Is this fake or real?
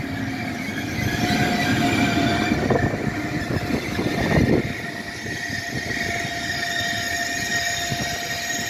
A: real